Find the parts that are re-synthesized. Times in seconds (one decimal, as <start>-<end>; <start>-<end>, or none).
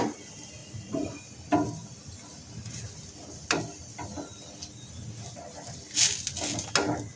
0.6-1.2